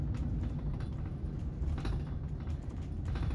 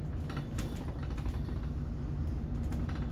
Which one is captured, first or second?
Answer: second